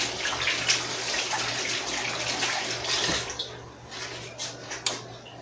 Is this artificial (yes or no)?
no